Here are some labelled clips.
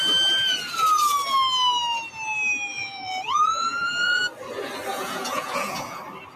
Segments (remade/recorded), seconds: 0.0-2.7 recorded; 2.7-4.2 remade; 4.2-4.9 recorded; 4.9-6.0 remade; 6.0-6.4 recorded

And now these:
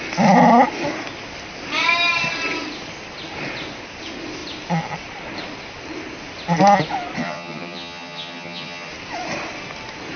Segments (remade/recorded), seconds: 0.0-7.2 recorded; 7.2-8.9 remade; 8.9-10.2 recorded

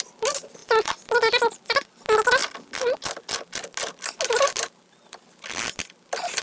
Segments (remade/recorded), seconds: 0.0-0.6 recorded; 0.6-1.3 remade; 1.3-6.4 recorded